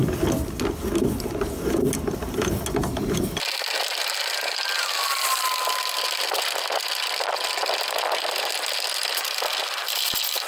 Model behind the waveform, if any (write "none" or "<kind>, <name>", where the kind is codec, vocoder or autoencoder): none